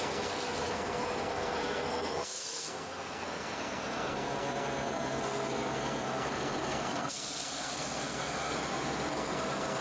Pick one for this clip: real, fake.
fake